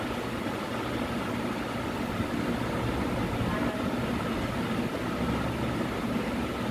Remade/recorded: recorded